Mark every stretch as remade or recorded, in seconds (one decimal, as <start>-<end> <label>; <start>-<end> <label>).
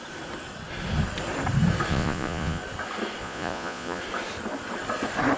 0.0-1.9 recorded; 1.9-2.6 remade; 2.6-3.2 recorded; 3.2-4.0 remade; 4.0-5.4 recorded